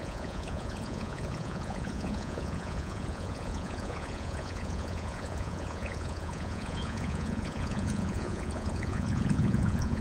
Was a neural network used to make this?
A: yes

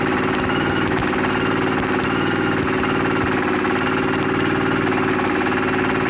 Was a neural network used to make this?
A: no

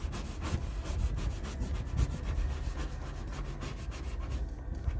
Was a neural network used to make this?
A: no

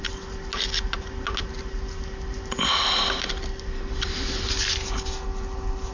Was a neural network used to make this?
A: no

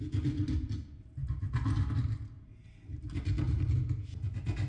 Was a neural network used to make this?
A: no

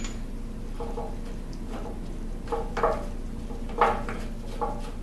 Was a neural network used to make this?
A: no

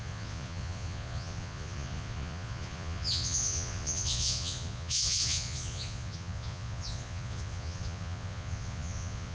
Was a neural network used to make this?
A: yes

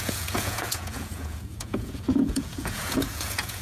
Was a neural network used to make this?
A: yes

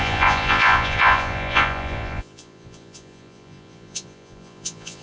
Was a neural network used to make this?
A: yes